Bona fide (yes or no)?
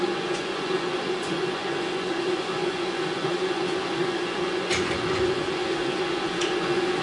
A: no